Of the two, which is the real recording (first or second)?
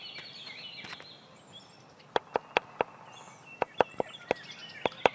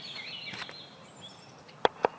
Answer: first